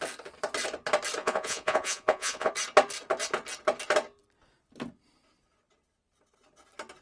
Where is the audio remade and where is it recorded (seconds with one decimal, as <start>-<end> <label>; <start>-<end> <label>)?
0.0-1.2 recorded; 1.2-2.5 remade; 2.5-7.0 recorded